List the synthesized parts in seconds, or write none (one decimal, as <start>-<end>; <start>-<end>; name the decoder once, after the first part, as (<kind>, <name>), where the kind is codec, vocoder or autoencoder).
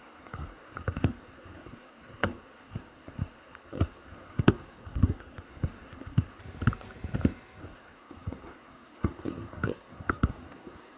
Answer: 0.0-6.4 (codec, SNAC); 7.6-11.0